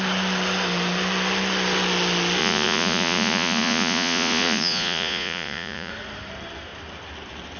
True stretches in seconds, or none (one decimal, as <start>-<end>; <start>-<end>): 0.0-2.4; 5.9-7.6